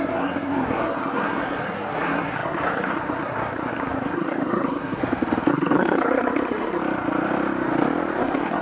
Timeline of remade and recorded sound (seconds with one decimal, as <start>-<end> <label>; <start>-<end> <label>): 0.0-5.0 remade; 5.0-5.5 recorded; 5.5-6.8 remade; 6.8-8.2 recorded; 8.2-8.6 remade